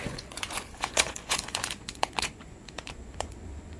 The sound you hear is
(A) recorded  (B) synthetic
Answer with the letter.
B